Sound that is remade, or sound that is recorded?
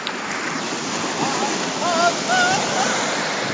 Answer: recorded